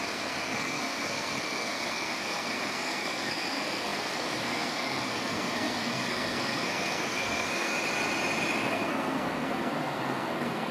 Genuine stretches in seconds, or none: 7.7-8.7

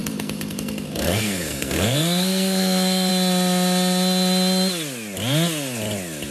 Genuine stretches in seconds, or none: 3.1-6.3

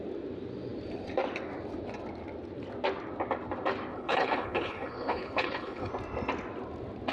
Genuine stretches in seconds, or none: 0.0-3.9; 5.9-7.1

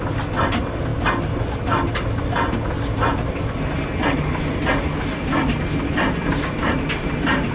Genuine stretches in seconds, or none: 0.0-7.5